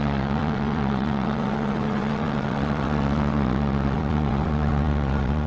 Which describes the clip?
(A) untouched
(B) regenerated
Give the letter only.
B